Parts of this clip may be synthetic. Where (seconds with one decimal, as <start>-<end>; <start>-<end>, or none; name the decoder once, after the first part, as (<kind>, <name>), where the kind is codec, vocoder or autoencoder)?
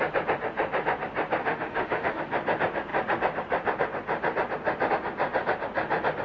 1.4-2.2 (autoencoder, DAC-VAE)